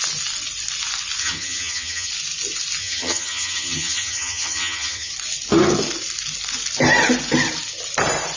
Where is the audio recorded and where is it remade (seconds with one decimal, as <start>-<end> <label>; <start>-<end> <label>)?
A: 0.0-1.2 recorded; 1.2-2.1 remade; 2.1-2.8 recorded; 2.8-5.1 remade; 5.1-8.4 recorded